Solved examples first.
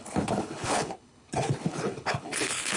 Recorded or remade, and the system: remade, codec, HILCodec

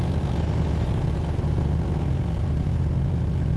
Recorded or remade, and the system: recorded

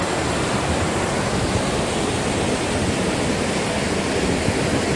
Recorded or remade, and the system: recorded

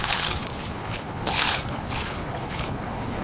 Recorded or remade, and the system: remade, codec, HILCodec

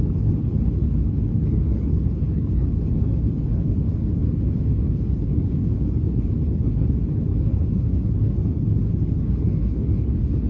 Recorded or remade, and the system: remade, codec, HILCodec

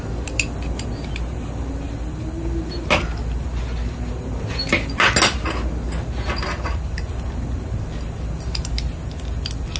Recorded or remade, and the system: recorded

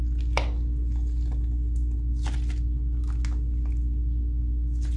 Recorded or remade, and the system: recorded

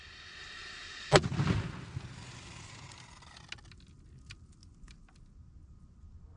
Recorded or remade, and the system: recorded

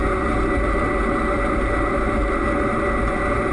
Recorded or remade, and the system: recorded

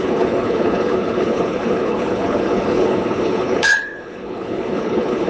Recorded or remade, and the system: remade, codec, HILCodec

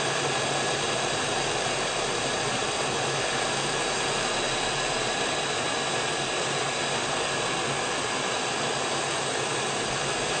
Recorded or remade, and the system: recorded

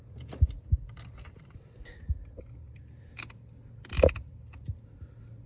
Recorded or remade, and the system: recorded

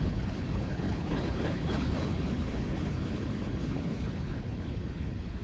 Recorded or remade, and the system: remade, codec, HILCodec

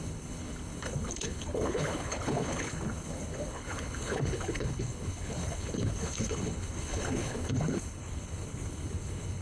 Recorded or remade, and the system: remade, codec, HILCodec